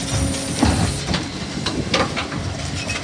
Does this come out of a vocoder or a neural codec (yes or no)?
no